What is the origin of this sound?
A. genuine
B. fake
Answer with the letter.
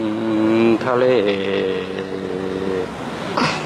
A